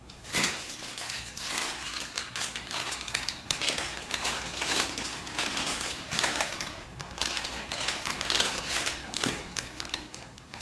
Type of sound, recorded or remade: remade